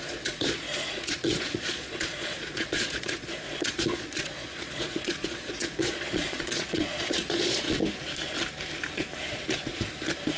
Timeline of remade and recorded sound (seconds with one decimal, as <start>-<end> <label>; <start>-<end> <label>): 0.0-7.8 remade; 7.8-10.4 recorded